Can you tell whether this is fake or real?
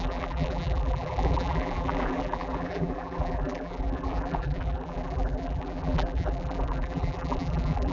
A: fake